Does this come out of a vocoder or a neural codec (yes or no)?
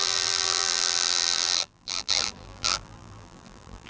yes